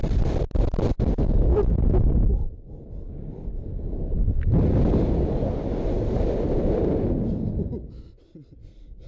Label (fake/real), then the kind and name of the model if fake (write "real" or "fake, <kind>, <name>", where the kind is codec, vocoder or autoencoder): real